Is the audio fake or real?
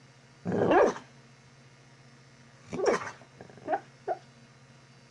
real